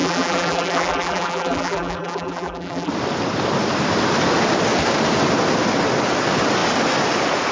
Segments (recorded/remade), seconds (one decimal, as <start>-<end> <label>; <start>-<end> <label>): 0.0-2.9 remade; 2.9-7.5 recorded